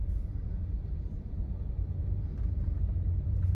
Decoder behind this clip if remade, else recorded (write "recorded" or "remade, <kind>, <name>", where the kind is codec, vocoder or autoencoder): remade, vocoder, BigVGAN v2